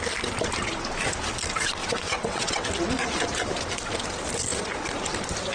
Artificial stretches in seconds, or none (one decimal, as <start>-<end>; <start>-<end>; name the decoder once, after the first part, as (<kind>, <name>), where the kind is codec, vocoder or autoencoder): 1.8-2.7 (vocoder, WaveNeXt)